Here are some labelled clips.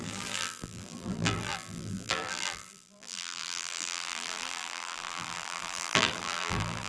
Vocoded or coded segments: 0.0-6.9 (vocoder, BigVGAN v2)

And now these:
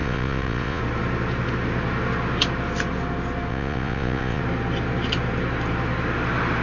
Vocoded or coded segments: 0.0-0.8 (vocoder, Vocos); 3.5-4.4

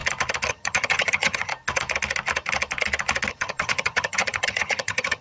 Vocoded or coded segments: 0.5-1.5 (vocoder, HiFi-GAN); 3.3-5.2

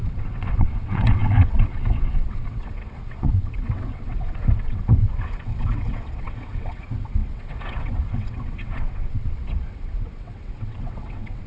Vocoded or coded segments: 0.0-11.5 (vocoder, WaveNeXt)

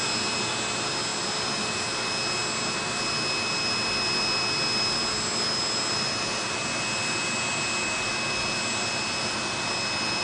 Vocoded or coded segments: none